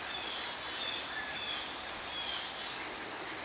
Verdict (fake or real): real